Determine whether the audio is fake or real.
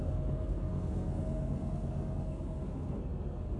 fake